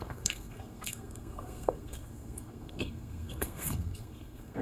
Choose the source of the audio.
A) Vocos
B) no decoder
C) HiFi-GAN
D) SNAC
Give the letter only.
D